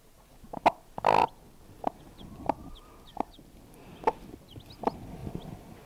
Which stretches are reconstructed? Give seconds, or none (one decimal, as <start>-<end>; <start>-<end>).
none